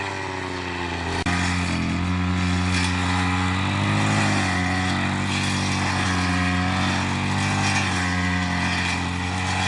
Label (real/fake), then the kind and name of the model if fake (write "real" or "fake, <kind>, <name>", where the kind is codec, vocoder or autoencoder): real